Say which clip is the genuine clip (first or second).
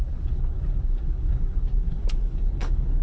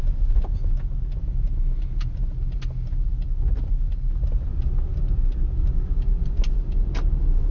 second